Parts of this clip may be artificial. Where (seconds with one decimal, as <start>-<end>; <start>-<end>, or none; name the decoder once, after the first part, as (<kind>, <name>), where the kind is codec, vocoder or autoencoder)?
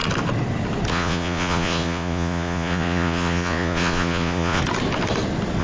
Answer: 0.9-4.6 (vocoder, Vocos)